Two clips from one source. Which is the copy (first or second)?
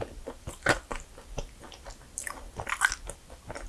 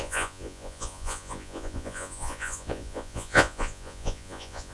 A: second